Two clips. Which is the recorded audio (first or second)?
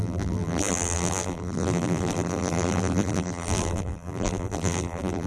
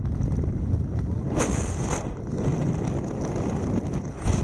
second